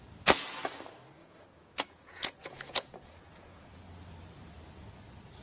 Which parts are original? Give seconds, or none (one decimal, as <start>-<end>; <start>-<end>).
0.0-1.2; 3.8-5.4

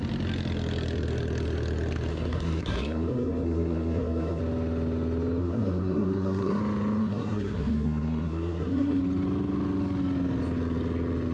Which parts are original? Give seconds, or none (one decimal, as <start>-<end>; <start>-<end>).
0.0-2.1; 4.4-5.4; 6.6-7.0; 9.0-11.3

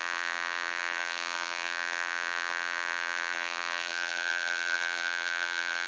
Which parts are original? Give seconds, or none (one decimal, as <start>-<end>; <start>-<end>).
none

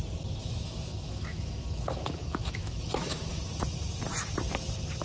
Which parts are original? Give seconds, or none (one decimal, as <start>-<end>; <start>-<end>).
0.0-0.4; 3.4-5.0